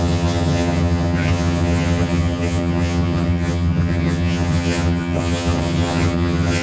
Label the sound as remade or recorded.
remade